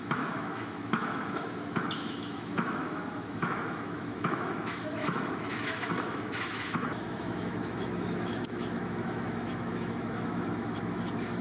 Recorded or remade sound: remade